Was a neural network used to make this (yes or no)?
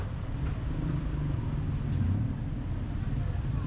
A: no